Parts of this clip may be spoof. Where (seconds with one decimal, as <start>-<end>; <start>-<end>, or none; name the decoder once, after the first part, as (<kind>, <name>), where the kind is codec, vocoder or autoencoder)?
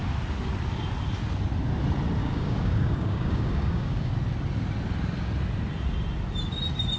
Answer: 2.2-4.1 (codec, DAC)